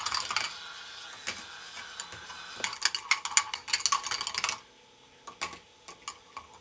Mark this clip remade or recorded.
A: recorded